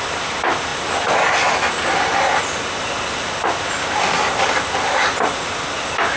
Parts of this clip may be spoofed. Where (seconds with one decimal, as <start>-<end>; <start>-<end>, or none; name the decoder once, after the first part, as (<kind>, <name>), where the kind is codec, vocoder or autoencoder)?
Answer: none